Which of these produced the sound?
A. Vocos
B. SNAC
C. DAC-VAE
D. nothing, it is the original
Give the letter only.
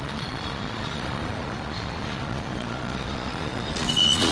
A